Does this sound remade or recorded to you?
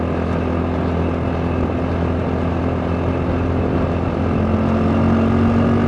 recorded